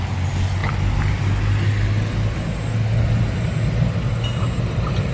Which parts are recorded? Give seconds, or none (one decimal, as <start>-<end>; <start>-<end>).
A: 0.0-5.1